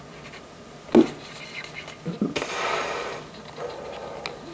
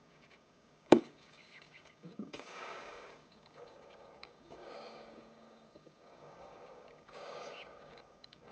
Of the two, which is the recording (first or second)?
first